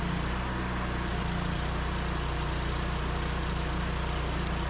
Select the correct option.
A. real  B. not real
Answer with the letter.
A